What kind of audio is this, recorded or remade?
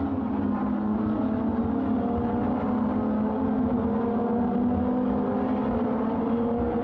recorded